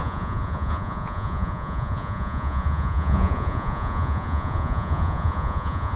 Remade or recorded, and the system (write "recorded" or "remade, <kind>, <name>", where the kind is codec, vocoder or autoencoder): remade, vocoder, Vocos